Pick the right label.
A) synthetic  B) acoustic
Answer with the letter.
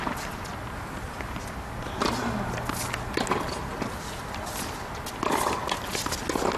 B